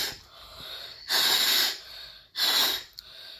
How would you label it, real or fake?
fake